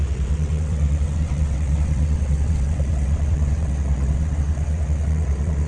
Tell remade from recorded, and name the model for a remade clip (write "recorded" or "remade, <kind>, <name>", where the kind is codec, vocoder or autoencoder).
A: remade, vocoder, WaveNeXt